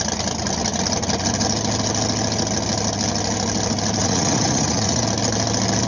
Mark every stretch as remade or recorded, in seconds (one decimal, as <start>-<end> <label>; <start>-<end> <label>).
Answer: 0.0-4.0 recorded; 4.0-5.0 remade; 5.0-5.9 recorded